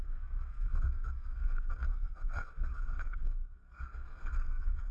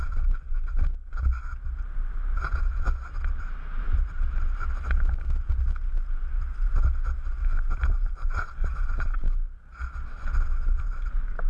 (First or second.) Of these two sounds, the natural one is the second